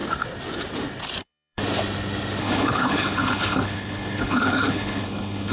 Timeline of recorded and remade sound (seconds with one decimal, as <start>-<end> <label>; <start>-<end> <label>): 0.0-1.2 recorded; 1.2-1.6 remade; 1.6-2.4 recorded; 2.4-5.5 remade